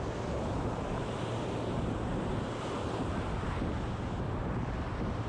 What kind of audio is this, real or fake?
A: real